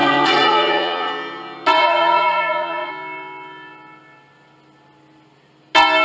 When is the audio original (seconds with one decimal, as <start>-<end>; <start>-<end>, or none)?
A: 1.1-1.8; 2.9-6.0